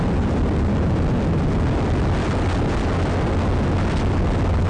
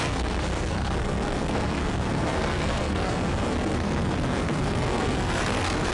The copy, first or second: second